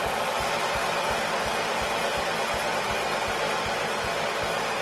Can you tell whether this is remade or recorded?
recorded